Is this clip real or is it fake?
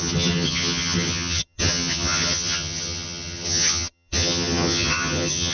fake